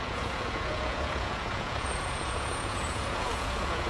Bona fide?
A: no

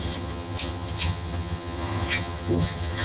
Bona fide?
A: no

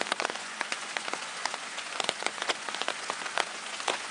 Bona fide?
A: no